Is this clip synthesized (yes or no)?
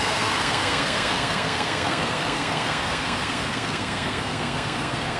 yes